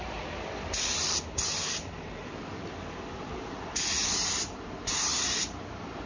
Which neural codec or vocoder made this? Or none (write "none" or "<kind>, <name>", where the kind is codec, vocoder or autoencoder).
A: vocoder, BigVGAN v2